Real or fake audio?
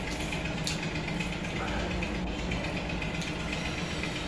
real